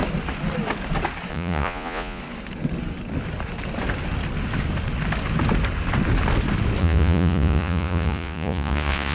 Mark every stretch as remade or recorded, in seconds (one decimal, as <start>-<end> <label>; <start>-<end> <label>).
0.0-1.3 recorded; 1.3-2.2 remade; 2.2-6.8 recorded; 6.8-9.1 remade